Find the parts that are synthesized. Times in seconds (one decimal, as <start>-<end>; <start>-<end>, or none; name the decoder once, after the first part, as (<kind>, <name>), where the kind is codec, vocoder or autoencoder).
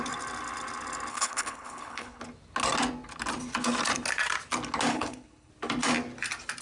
1.1-2.2 (codec, HILCodec); 4.9-5.5